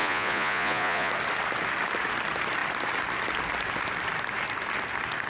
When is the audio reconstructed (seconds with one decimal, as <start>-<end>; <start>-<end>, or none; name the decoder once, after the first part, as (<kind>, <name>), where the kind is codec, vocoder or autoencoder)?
0.0-1.1 (vocoder, Vocos)